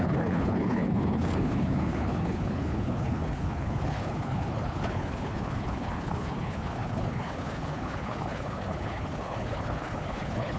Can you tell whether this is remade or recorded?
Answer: remade